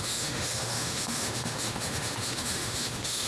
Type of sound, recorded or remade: remade